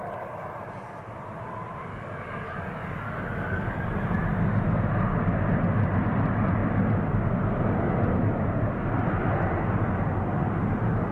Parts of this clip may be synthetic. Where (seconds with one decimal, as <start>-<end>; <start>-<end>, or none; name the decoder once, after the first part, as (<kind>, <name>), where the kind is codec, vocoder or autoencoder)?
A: 1.9-3.8 (codec, DAC)